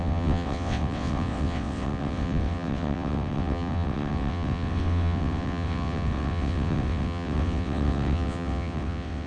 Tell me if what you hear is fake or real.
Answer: fake